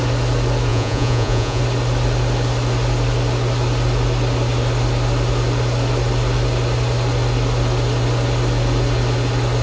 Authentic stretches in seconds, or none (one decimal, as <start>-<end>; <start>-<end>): 0.0-0.7; 1.6-9.6